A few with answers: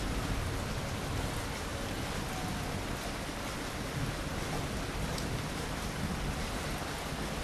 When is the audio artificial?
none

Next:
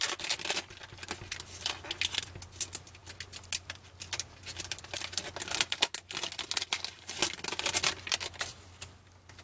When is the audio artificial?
none

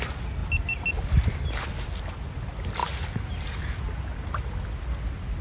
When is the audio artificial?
none

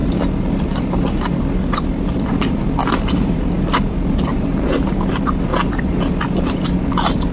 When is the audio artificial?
4.3-5.1 (vocoder, BigVGAN v2)

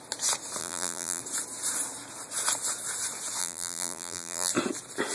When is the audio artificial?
0.6-1.2 (vocoder, BigVGAN v2); 3.4-4.5